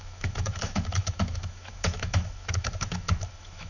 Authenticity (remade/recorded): remade